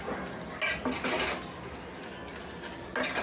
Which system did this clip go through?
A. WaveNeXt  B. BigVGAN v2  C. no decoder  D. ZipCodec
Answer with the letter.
C